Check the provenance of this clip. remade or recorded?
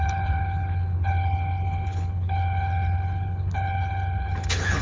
remade